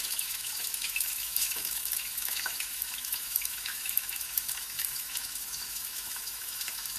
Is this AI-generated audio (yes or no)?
yes